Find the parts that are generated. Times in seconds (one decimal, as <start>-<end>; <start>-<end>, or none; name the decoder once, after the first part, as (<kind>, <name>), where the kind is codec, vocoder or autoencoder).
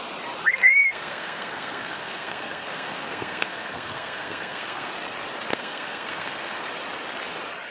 0.4-4.9 (codec, SNAC); 5.5-6.7